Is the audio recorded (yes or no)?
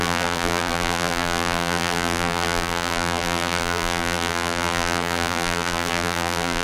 no